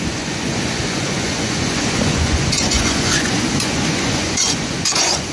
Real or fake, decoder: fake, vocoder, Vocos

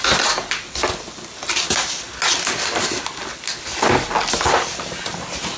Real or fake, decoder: real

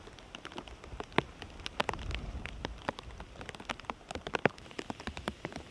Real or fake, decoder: real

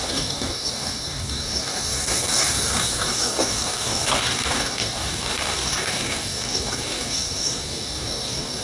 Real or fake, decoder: fake, codec, DAC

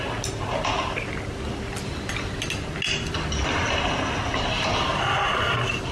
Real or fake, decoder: real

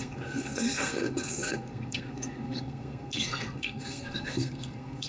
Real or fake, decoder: fake, codec, SNAC